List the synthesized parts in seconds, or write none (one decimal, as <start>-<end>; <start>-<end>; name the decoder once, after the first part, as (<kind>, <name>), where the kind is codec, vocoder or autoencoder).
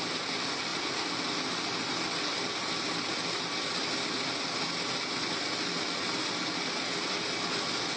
none